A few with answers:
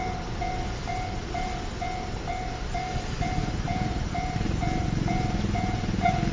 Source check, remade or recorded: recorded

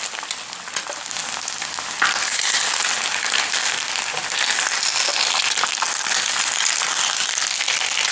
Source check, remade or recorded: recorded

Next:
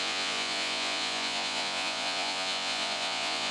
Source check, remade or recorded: remade